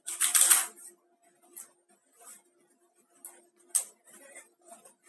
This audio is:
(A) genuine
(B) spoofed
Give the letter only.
A